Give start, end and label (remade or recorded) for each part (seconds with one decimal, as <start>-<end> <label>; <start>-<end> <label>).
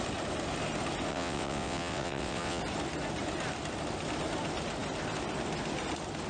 0.0-1.1 recorded; 1.1-2.6 remade; 2.6-6.3 recorded